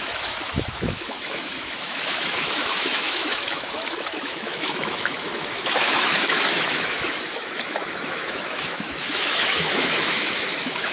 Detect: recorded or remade remade